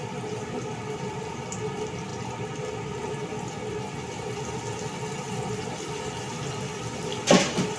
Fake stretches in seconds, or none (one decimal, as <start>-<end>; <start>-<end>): none